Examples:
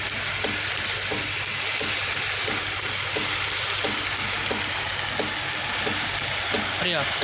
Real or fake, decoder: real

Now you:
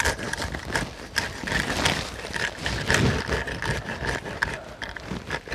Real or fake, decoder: real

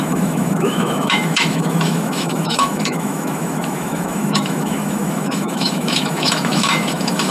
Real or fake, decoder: fake, autoencoder, DAC-VAE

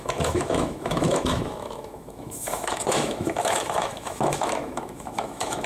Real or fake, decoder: fake, autoencoder, DAC-VAE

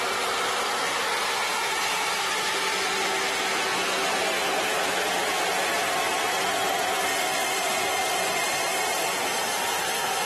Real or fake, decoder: real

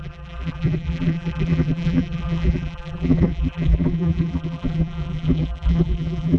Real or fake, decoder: fake, vocoder, BigVGAN v2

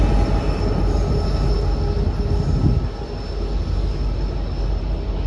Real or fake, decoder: real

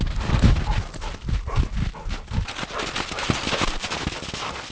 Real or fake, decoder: real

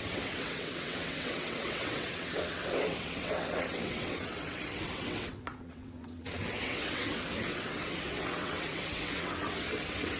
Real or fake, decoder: fake, vocoder, WaveNeXt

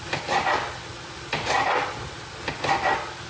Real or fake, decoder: real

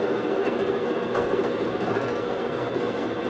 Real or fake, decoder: fake, codec, SNAC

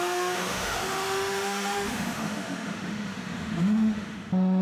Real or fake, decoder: fake, autoencoder, DAC-VAE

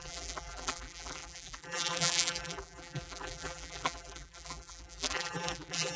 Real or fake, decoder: fake, vocoder, BigVGAN v2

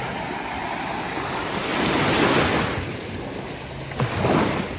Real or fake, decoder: real